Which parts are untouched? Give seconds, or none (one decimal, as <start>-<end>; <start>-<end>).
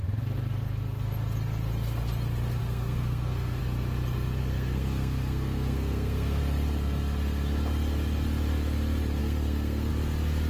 0.0-2.6; 3.6-4.4; 6.4-9.2; 9.9-10.5